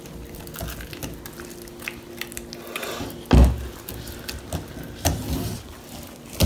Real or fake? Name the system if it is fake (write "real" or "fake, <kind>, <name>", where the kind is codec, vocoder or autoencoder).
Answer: real